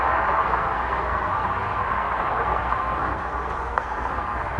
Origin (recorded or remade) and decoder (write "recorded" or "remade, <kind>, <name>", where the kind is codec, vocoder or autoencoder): remade, codec, SNAC